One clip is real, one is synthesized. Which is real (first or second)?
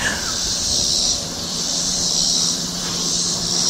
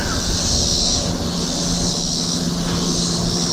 second